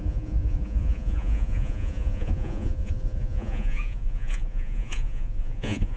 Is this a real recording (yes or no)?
no